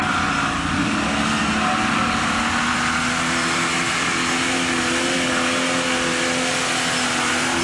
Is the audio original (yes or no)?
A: yes